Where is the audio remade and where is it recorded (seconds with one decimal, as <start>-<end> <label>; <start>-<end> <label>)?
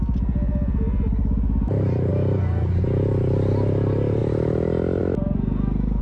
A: 0.0-6.0 recorded